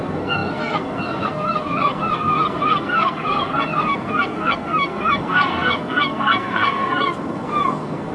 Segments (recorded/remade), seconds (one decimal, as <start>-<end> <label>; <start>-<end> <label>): 0.0-8.1 remade